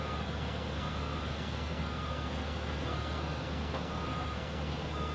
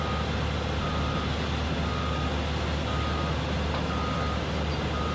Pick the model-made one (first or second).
first